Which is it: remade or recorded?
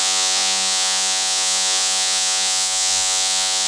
remade